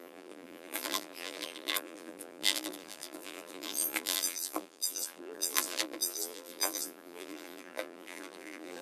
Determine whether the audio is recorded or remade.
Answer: remade